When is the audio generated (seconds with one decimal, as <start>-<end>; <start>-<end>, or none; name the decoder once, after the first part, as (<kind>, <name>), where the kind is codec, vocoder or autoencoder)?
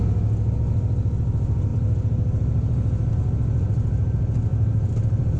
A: 4.5-5.4 (vocoder, BigVGAN v2)